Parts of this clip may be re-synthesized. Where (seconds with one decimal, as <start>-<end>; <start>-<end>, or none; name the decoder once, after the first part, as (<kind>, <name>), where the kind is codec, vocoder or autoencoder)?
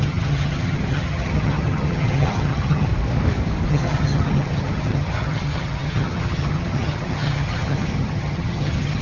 0.0-2.9 (vocoder, HiFi-GAN); 3.7-9.0